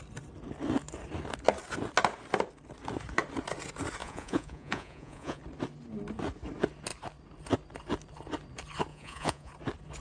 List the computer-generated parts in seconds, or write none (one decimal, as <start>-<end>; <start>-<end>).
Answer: 4.0-5.4; 8.9-9.5